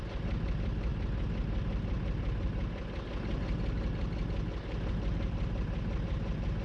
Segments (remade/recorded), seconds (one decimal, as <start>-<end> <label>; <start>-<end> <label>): 0.0-6.6 recorded